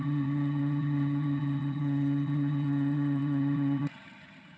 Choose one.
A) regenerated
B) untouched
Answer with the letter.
A